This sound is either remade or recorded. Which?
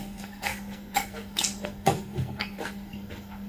remade